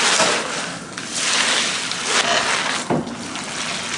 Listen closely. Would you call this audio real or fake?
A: real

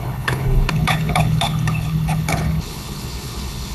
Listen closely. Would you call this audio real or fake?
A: fake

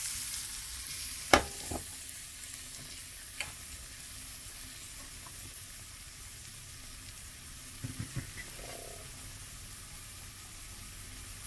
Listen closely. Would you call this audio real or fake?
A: real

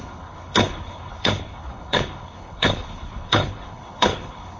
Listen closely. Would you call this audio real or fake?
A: fake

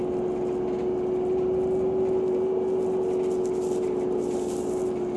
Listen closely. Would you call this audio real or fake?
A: real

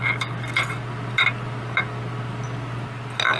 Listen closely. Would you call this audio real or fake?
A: real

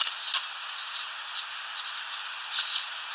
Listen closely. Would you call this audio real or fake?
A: real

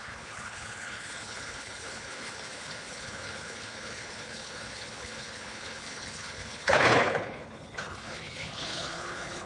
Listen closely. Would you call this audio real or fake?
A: fake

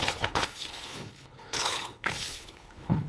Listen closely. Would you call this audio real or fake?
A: fake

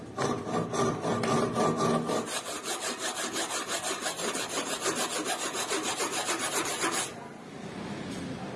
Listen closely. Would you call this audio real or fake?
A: real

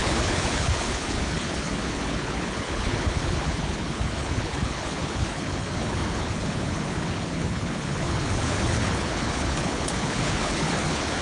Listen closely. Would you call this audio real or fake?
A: fake